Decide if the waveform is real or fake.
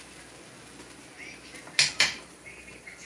real